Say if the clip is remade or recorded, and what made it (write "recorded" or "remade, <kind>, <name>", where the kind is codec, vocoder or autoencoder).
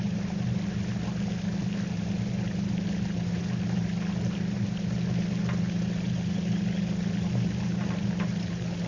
recorded